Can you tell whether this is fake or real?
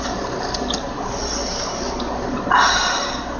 real